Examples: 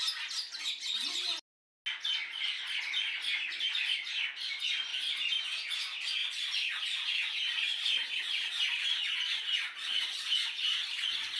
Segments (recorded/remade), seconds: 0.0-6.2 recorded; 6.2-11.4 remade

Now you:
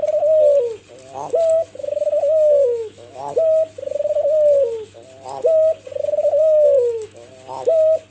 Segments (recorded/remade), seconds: 0.0-1.6 recorded; 1.6-3.2 remade; 3.2-6.4 recorded; 6.4-7.3 remade; 7.3-8.1 recorded

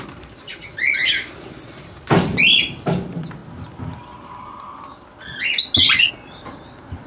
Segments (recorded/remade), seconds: 0.0-7.1 recorded

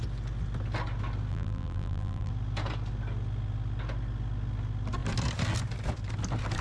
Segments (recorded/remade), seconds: 0.0-1.3 recorded; 1.3-2.3 remade; 2.3-6.6 recorded

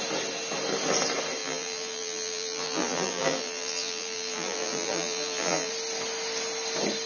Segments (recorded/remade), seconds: 0.0-1.4 recorded; 1.4-5.7 remade; 5.7-7.1 recorded